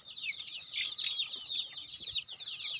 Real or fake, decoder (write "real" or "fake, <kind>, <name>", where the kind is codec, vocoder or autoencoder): real